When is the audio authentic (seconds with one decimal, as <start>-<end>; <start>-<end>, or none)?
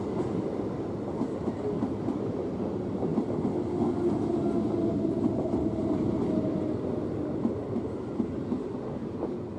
0.0-9.6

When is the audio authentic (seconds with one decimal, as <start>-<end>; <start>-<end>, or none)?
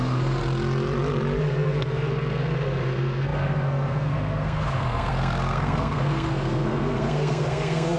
0.4-1.4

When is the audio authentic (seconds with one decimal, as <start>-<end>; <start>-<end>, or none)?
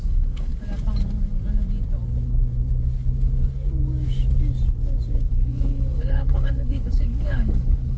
0.5-5.3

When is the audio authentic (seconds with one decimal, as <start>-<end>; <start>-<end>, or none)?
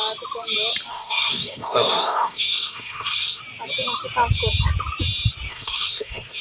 0.0-0.9; 3.4-5.5